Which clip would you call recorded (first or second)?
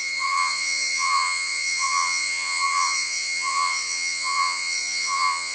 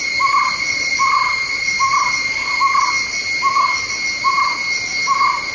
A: second